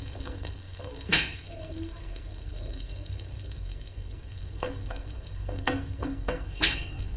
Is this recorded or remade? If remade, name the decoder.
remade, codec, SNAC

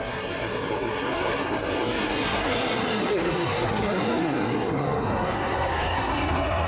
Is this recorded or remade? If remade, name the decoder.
remade, codec, SNAC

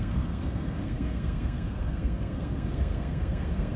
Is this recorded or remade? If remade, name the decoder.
remade, codec, SNAC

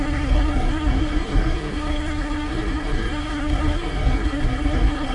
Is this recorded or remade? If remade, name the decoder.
remade, codec, SNAC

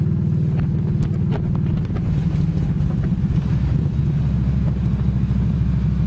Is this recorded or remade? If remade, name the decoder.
recorded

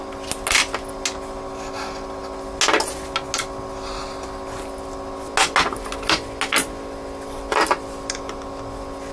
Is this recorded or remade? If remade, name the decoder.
recorded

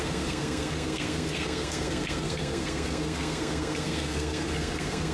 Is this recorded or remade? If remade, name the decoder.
remade, codec, SNAC